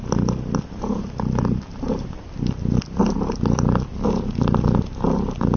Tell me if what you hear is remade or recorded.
recorded